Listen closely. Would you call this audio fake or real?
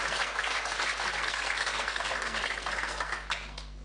fake